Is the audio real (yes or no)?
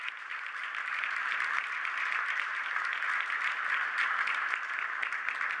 yes